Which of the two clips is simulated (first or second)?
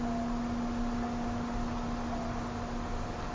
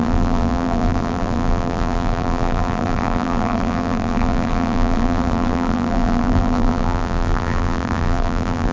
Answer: second